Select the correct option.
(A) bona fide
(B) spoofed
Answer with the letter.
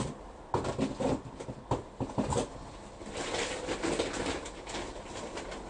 A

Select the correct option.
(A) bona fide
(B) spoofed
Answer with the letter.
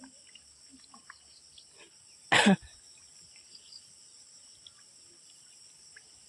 A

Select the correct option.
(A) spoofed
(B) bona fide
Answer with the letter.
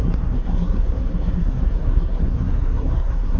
A